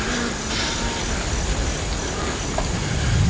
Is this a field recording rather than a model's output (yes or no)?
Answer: yes